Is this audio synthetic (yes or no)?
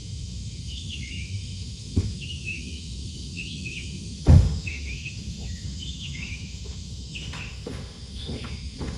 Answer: yes